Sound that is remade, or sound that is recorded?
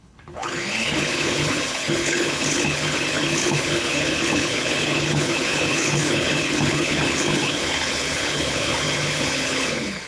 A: remade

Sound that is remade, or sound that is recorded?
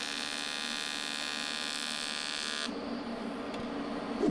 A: recorded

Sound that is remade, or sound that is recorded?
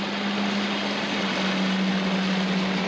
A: recorded